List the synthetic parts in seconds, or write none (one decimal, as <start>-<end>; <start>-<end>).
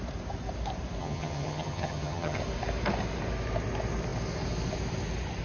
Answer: 1.0-2.4